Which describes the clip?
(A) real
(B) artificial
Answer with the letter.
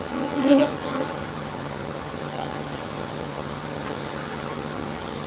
B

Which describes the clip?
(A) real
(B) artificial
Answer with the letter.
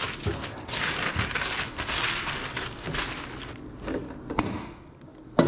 A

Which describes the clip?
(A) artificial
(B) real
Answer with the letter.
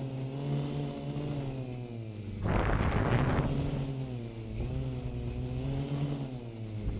B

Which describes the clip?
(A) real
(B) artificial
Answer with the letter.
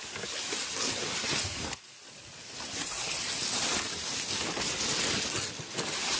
A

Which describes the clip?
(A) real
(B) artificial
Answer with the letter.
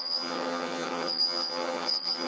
B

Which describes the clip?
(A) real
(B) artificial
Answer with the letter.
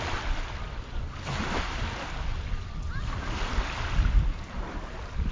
A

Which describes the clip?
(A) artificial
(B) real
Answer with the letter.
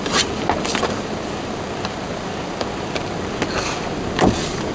B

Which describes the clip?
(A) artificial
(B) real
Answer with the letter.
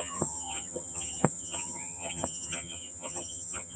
A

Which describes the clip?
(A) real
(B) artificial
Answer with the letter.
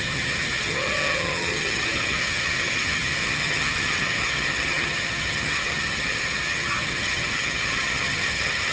B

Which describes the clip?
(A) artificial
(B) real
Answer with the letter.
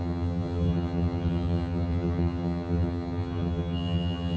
A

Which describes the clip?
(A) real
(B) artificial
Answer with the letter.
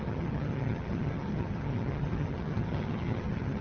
B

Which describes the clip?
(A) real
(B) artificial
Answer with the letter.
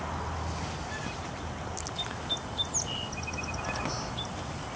A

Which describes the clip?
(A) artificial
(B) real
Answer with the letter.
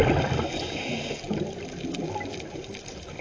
B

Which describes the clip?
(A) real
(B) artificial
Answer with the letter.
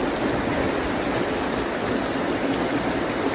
A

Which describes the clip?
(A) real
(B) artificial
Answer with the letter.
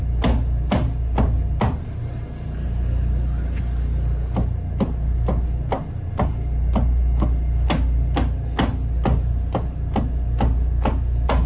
A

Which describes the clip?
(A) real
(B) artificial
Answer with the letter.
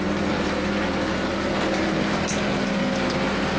A